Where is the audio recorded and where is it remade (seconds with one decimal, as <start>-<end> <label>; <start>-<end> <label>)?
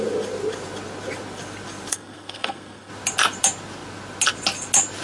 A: 0.0-1.9 recorded; 1.9-2.9 remade; 2.9-5.0 recorded